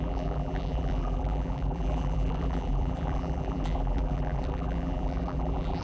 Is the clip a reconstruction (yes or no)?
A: yes